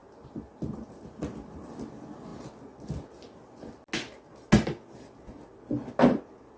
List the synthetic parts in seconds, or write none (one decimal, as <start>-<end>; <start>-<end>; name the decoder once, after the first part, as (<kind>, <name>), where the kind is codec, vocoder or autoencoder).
none